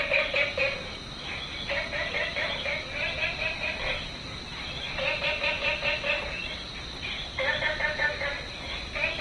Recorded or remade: recorded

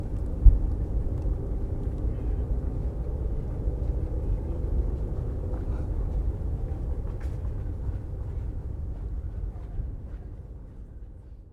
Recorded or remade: recorded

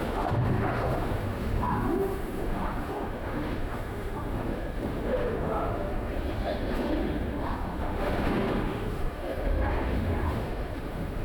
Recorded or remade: remade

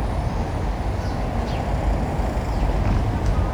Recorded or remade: recorded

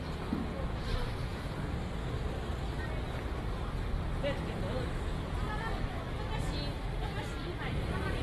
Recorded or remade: recorded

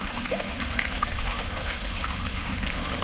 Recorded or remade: remade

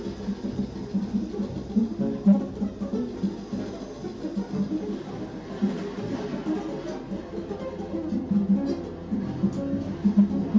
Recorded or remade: recorded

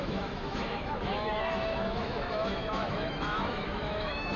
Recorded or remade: remade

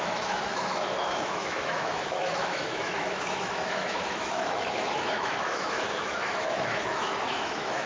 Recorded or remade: remade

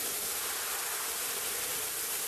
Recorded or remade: recorded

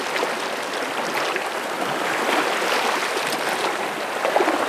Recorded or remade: recorded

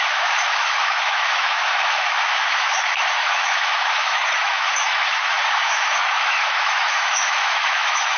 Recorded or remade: remade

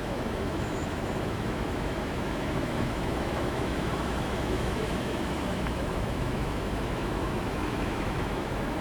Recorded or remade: remade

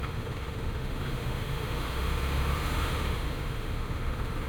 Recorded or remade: remade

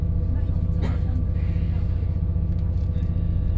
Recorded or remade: recorded